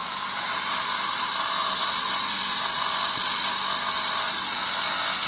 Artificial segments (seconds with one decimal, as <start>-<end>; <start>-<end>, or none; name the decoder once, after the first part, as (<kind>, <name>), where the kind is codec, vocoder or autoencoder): 0.0-2.6 (vocoder, BigVGAN v2)